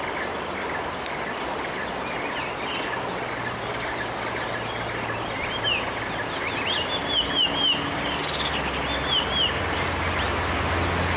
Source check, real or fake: real